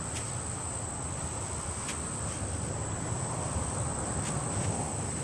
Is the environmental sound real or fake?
fake